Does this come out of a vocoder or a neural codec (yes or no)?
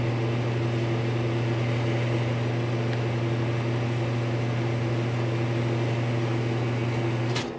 no